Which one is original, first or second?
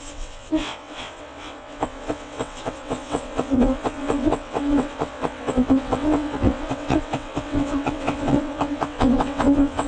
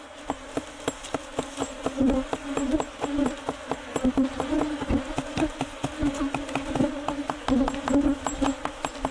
second